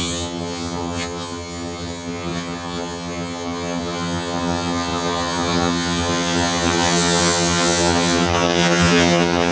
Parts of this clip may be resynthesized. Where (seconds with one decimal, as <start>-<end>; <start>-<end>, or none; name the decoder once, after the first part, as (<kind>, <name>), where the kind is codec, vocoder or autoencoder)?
0.0-9.5 (vocoder, HiFi-GAN)